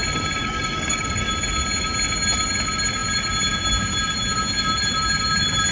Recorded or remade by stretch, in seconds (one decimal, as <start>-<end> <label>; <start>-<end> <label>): 0.0-0.4 recorded; 0.4-1.3 remade; 1.3-5.7 recorded